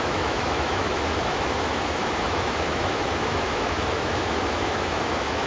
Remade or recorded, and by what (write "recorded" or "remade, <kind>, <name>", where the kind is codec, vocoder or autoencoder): remade, autoencoder, DAC-VAE